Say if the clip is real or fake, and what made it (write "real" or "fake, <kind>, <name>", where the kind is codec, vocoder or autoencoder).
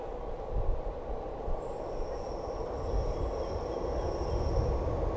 real